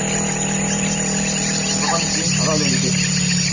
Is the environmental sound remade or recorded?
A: recorded